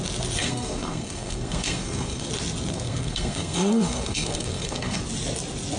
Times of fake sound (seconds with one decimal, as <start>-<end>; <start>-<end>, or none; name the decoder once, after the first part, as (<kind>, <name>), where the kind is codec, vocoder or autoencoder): 0.4-2.3 (codec, SNAC); 2.7-5.0